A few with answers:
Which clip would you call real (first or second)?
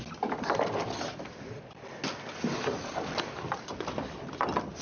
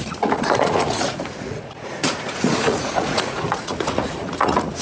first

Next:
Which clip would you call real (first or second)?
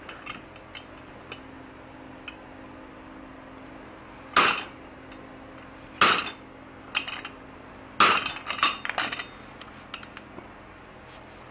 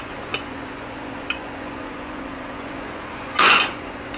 first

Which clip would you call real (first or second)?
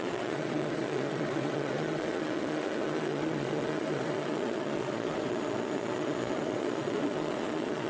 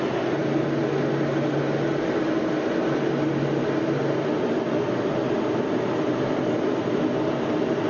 second